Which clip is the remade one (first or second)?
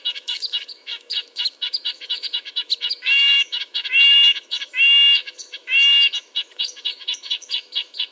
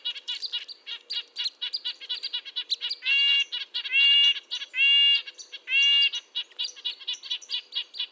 first